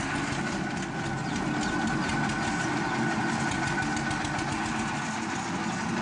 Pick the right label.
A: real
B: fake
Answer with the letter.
A